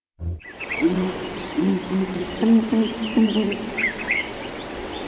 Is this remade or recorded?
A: remade